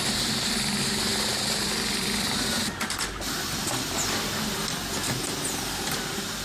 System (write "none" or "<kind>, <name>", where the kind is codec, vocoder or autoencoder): none